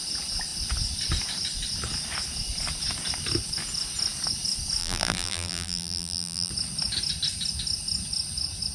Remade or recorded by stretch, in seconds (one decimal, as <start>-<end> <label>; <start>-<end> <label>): 0.0-4.8 recorded; 4.8-6.5 remade; 6.5-8.7 recorded